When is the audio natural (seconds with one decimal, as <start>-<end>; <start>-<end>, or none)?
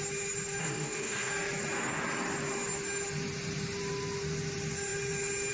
0.0-0.6; 1.3-5.5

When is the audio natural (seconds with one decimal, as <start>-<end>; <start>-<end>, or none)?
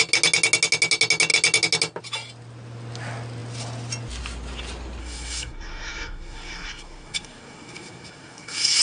0.0-5.0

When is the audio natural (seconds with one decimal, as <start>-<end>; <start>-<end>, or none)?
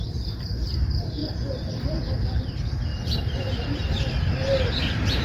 none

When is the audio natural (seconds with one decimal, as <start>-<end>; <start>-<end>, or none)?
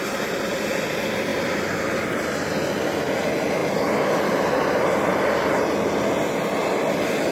0.0-1.3; 2.5-7.3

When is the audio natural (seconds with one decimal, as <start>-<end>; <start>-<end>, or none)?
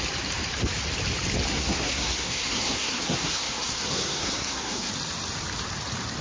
0.0-1.5; 4.9-6.2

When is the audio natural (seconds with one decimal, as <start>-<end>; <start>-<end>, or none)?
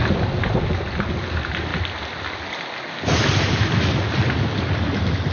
0.0-5.3